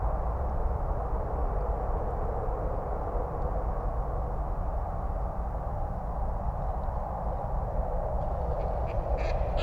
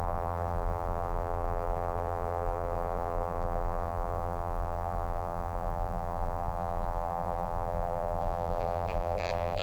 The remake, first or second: second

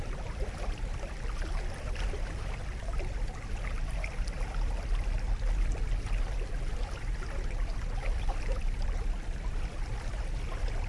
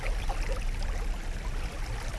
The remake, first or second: first